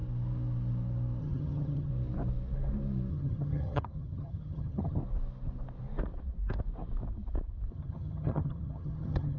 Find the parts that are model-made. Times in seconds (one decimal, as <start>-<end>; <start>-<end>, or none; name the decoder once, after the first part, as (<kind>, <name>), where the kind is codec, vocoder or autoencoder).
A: 1.2-1.9 (vocoder, HiFi-GAN); 3.1-5.0; 7.7-9.4

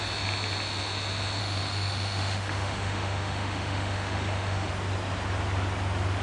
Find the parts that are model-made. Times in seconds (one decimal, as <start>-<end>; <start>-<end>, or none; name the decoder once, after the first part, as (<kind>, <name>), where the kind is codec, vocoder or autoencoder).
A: 1.4-4.7 (autoencoder, DAC-VAE)

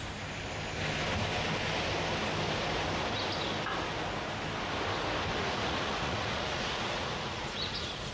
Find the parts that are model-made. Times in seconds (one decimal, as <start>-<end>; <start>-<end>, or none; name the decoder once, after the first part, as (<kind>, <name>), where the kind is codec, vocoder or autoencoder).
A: 5.4-8.1 (vocoder, Vocos)

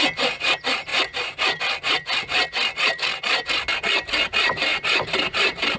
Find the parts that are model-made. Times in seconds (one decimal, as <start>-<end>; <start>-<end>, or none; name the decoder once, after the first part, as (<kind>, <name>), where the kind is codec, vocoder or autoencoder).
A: 4.7-5.8 (vocoder, BigVGAN v2)

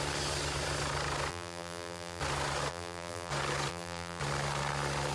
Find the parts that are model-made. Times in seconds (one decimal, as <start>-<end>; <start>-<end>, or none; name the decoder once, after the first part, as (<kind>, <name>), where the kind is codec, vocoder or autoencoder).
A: 1.3-2.2 (vocoder, BigVGAN v2); 2.7-3.3; 3.7-4.2

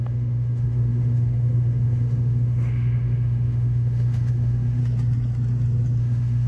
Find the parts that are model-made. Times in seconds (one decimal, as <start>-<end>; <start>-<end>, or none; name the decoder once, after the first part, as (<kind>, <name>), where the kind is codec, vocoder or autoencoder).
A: 0.0-4.8 (autoencoder, DAC-VAE); 6.0-6.5

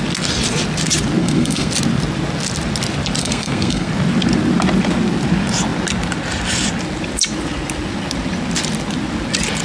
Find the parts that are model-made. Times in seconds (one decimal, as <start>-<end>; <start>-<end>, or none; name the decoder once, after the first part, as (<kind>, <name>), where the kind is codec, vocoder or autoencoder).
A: 1.2-1.7 (codec, SNAC); 3.2-3.9